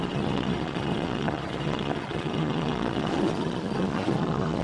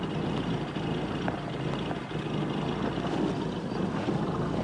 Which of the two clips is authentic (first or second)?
second